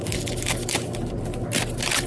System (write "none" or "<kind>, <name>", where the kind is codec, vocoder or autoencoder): none